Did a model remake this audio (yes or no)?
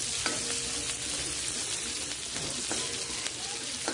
no